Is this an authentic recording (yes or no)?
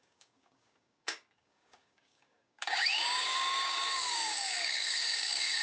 no